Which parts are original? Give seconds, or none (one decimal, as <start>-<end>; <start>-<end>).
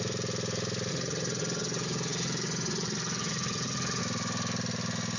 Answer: 0.0-0.9; 4.0-5.2